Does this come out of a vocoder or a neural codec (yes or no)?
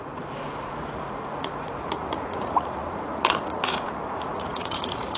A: yes